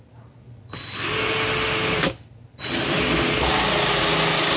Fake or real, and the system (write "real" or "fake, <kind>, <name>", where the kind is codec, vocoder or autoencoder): real